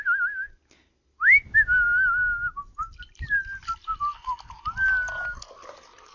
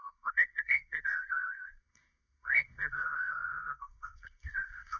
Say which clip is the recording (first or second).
first